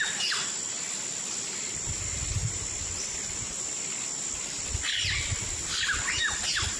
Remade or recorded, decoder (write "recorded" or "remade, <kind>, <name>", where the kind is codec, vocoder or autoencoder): recorded